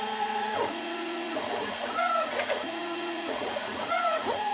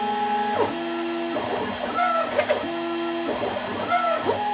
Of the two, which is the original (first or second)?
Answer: second